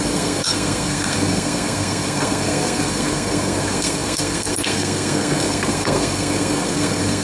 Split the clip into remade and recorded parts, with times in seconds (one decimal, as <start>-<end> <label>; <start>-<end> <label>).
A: 0.0-7.2 remade